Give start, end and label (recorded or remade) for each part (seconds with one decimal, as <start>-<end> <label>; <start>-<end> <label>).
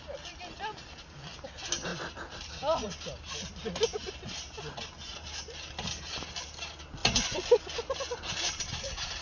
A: 0.0-1.9 recorded; 1.9-3.5 remade; 3.5-3.9 recorded; 3.9-5.4 remade; 5.4-9.2 recorded